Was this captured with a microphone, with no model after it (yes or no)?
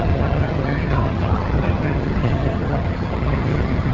no